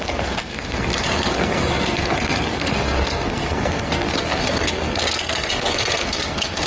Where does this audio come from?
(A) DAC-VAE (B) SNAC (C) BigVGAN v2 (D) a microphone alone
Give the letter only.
B